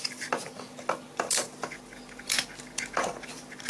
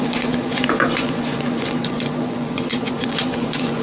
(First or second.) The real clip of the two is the first